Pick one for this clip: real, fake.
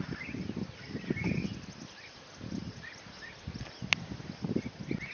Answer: real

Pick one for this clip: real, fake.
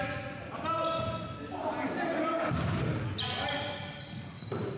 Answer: real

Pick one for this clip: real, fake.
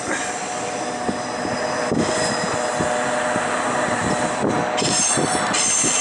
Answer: real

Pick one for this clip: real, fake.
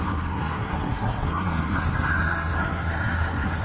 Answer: fake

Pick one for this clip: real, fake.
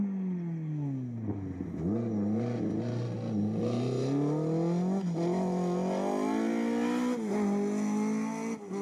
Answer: real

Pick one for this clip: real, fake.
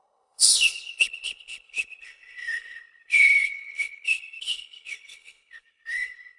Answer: fake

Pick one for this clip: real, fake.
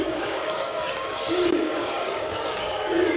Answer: fake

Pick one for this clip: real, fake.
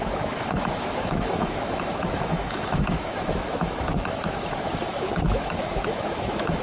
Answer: fake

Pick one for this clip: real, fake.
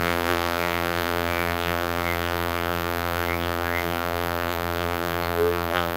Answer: fake